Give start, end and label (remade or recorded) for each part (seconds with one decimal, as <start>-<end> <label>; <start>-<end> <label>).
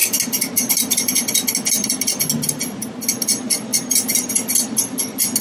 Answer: 0.0-5.4 recorded